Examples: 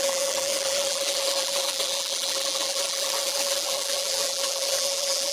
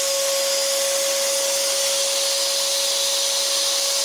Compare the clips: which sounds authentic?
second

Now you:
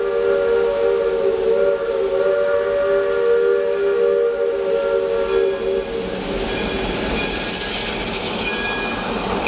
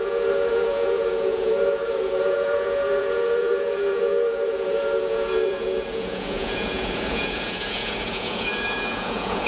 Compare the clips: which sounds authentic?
first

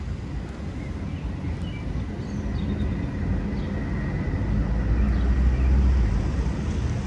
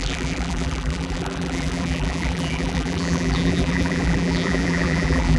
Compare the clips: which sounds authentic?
first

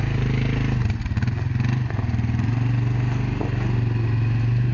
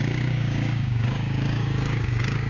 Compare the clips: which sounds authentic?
first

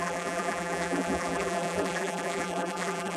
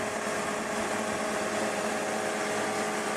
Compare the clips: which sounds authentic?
second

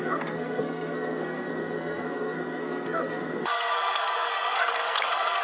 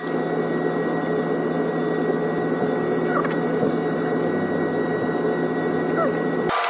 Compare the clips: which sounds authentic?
second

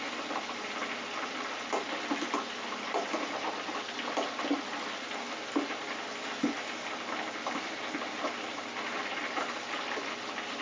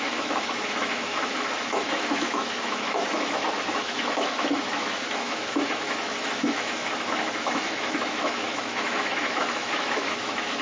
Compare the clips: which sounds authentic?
first